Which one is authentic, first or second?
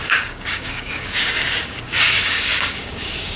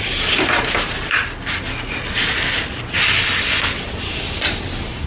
second